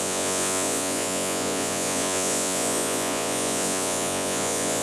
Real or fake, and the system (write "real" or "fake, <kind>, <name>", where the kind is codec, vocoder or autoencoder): fake, vocoder, Vocos